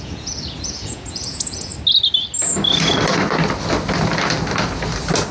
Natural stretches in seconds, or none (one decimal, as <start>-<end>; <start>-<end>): 1.7-5.3